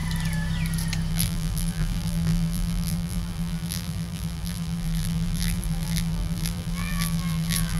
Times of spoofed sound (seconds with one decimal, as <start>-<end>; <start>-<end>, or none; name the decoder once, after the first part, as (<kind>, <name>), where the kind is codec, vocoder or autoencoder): 1.1-7.8 (vocoder, BigVGAN v2)